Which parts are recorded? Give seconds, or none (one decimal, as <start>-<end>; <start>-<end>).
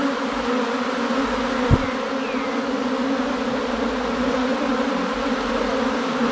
0.0-4.5; 5.5-6.3